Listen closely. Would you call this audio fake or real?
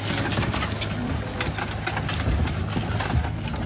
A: real